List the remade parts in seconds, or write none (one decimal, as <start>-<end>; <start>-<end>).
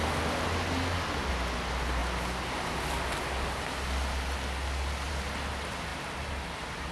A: none